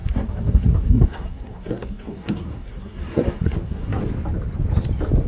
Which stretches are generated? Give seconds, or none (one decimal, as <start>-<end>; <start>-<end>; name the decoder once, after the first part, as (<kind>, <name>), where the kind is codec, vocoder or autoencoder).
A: 0.0-4.0 (codec, SNAC)